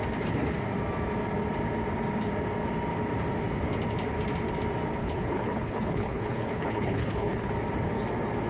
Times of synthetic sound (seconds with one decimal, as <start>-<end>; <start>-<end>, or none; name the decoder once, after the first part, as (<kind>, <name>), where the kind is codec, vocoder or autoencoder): 5.0-7.5 (codec, HILCodec)